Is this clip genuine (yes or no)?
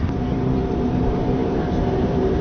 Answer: no